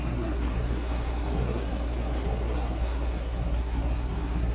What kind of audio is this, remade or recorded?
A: remade